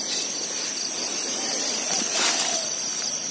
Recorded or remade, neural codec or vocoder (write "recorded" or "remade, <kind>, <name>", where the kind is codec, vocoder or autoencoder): remade, vocoder, BigVGAN v2